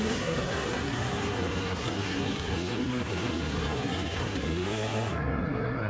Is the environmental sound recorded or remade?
remade